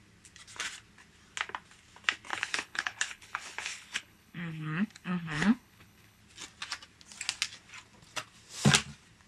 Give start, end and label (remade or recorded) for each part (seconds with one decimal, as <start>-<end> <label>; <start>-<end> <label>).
0.0-2.3 recorded; 2.3-6.2 remade; 6.2-9.3 recorded